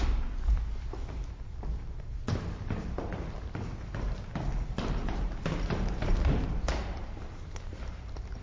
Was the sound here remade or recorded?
remade